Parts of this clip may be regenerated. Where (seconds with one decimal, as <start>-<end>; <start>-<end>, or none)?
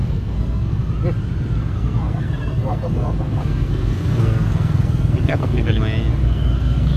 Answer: 0.0-0.9; 1.6-5.8; 6.2-7.0